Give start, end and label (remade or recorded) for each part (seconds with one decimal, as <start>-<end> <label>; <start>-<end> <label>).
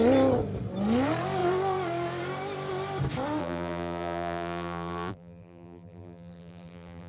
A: 0.0-3.4 recorded; 3.4-7.1 remade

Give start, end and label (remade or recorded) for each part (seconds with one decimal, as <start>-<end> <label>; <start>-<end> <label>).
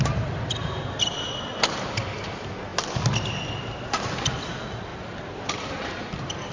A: 0.0-4.9 recorded; 4.9-6.1 remade; 6.1-6.5 recorded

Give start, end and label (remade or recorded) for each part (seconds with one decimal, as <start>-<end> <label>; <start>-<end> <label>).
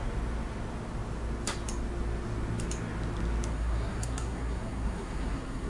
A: 0.0-3.5 recorded; 3.5-5.7 remade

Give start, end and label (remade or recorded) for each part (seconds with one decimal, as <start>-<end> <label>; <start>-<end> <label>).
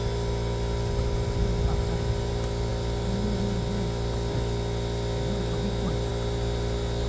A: 0.0-7.1 recorded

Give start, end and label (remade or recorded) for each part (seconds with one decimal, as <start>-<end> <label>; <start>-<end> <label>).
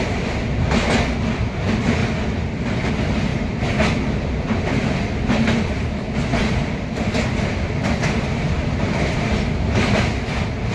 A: 0.0-10.7 recorded